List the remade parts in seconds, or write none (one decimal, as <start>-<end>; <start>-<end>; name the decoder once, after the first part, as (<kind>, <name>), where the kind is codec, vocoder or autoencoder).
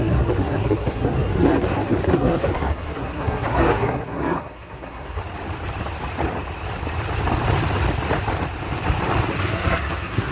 0.0-5.2 (codec, SNAC); 9.4-10.3